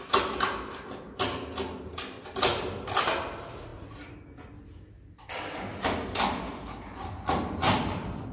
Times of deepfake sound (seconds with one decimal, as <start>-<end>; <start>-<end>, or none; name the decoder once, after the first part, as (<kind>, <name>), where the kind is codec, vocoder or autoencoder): none